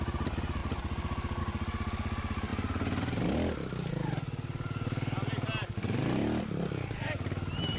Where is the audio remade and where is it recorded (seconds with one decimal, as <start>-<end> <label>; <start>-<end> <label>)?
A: 0.0-7.8 recorded